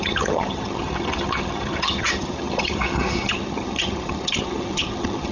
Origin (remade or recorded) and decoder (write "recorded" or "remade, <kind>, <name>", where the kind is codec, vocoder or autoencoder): remade, vocoder, HiFi-GAN